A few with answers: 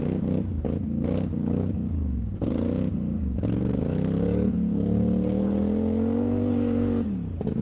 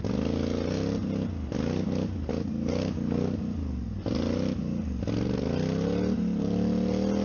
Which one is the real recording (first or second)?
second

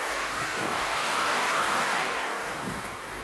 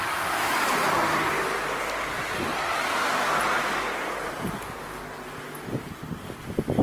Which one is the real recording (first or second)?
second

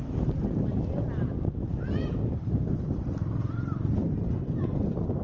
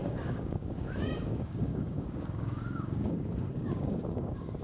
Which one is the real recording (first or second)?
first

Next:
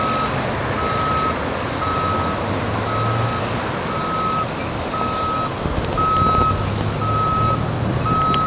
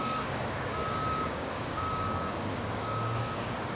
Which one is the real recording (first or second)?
first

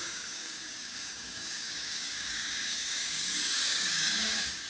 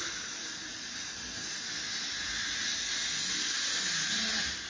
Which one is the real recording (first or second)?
second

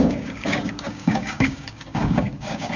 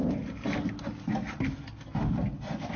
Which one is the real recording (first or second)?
second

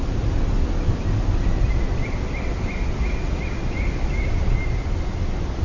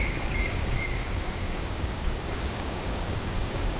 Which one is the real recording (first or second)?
first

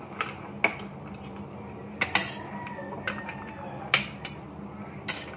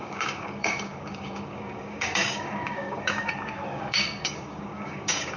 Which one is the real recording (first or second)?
first